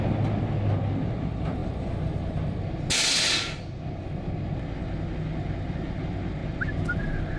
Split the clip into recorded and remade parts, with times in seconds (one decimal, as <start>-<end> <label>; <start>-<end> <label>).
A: 0.0-7.4 recorded